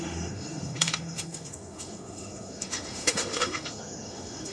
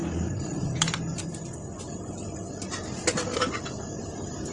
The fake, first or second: first